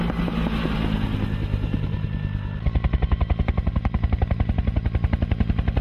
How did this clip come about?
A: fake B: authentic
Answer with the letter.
B